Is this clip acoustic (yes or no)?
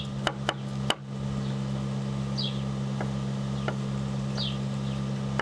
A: yes